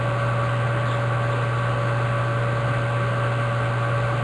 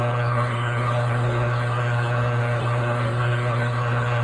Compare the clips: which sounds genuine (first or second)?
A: first